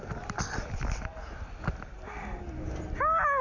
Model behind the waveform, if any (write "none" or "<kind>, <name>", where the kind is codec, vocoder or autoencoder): none